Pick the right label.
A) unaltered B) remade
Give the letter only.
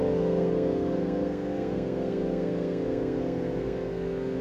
B